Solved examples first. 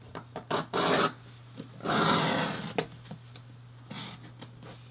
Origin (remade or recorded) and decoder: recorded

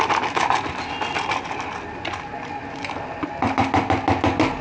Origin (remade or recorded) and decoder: recorded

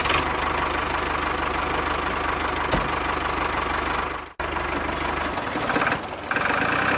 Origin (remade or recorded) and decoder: recorded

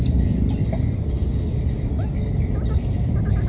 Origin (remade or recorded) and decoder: recorded